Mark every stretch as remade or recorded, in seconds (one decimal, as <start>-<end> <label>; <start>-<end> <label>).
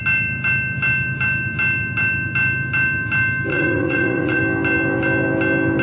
0.0-3.5 recorded; 3.5-4.4 remade; 4.4-5.8 recorded